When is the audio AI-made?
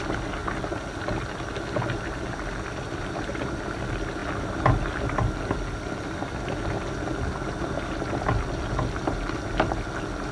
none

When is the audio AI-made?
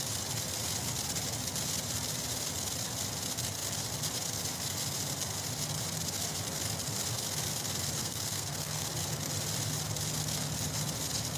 8.0-8.9 (codec, SNAC)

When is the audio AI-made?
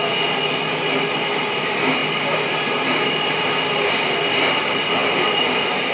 none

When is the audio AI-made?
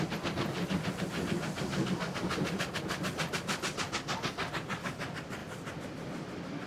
none